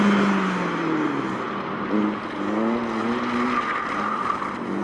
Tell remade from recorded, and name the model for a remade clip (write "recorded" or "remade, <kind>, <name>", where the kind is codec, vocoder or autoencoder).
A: recorded